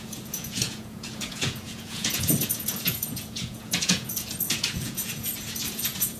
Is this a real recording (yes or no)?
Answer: no